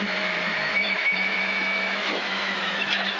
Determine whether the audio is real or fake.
fake